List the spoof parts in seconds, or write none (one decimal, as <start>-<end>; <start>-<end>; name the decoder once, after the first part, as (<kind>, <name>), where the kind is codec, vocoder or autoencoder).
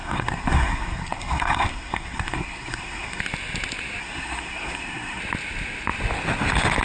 0.0-3.2 (codec, SNAC); 4.0-5.2